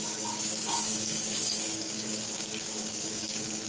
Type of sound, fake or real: fake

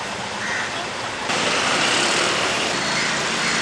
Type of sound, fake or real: real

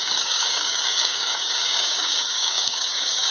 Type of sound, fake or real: fake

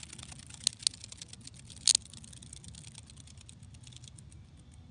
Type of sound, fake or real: real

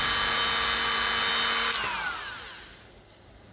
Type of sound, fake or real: real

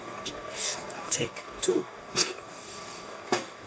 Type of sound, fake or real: fake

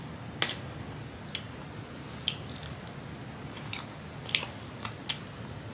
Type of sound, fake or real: real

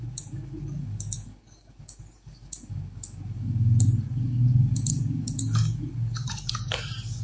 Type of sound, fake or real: fake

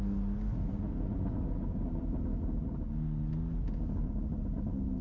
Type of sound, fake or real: real